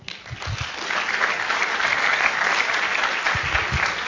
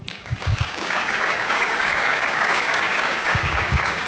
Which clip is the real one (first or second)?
first